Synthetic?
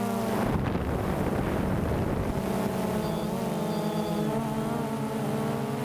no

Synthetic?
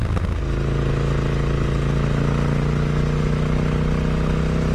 no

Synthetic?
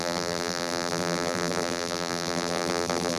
yes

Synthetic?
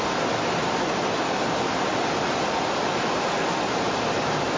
no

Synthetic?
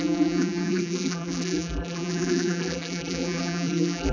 yes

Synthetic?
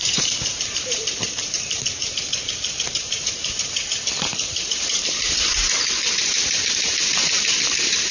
yes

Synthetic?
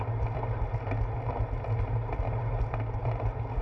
no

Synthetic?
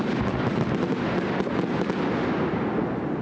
no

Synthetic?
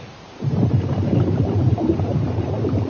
yes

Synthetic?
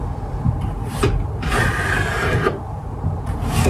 no